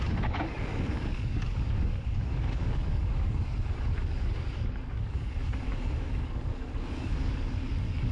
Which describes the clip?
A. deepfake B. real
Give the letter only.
A